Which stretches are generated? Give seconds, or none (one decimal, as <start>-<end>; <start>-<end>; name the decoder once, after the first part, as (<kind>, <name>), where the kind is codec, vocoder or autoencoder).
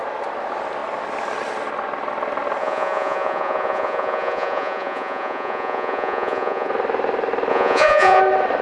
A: 2.6-6.7 (vocoder, Vocos); 7.5-8.2